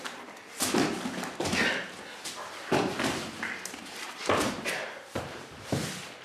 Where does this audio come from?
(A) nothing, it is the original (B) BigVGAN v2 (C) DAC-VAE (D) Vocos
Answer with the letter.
A